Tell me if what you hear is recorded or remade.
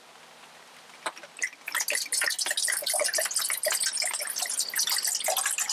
recorded